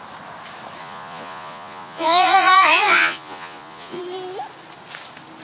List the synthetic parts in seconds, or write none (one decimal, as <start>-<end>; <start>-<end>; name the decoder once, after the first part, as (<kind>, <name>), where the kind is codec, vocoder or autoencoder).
0.8-4.0 (vocoder, Vocos)